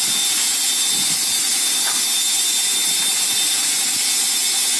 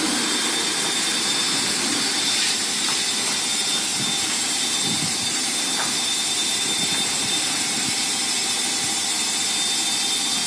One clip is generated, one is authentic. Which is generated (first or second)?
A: second